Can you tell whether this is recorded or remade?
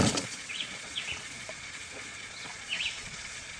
remade